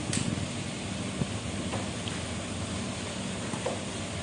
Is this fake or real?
real